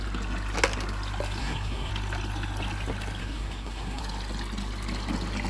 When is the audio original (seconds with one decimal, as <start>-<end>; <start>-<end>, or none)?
0.0-1.4; 1.9-3.2; 4.0-5.5